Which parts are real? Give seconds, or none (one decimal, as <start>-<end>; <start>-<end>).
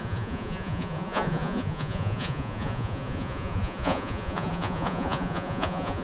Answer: none